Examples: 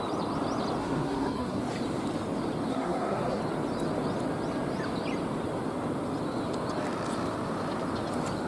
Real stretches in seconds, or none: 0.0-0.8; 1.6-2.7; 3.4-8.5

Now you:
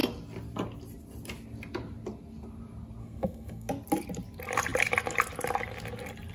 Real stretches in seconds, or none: 0.0-3.0; 3.7-6.3

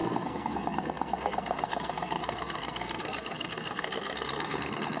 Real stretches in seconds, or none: none

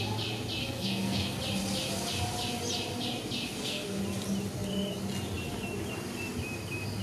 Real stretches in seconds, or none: 0.0-0.6; 1.4-3.5; 4.0-7.0

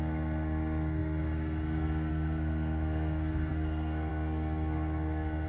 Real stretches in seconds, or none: none

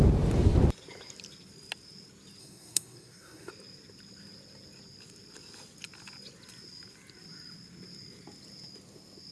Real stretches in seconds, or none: 0.0-2.4; 3.5-9.3

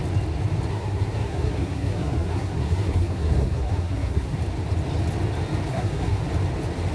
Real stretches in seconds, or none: 0.0-0.7; 4.4-5.7; 6.2-6.9